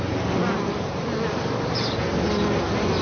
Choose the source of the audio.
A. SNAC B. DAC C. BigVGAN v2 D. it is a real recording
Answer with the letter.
D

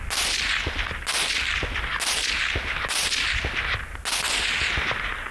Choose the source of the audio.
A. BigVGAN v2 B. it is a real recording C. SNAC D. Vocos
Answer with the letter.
B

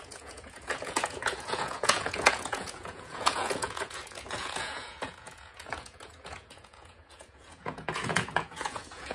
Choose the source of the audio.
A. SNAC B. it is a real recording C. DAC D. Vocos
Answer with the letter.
D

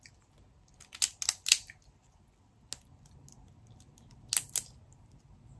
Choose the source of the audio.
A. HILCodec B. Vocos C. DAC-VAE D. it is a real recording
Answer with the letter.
D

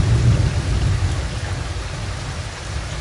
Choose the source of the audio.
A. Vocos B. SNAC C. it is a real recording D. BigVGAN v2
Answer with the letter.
C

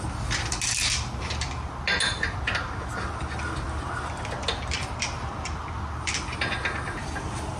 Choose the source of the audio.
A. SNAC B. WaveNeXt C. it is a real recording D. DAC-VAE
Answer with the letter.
C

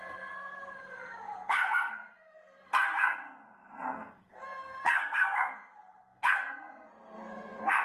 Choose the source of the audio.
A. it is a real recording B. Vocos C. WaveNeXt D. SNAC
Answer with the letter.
D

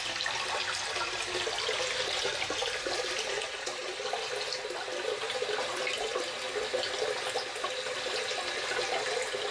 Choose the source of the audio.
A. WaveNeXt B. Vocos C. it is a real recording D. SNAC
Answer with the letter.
C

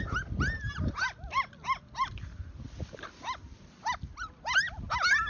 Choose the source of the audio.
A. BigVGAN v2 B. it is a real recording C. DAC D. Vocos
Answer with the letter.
B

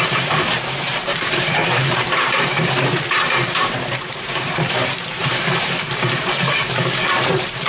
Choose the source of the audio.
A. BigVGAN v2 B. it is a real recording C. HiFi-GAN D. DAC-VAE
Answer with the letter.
A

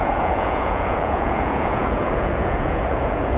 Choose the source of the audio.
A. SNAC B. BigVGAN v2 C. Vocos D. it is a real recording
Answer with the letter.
C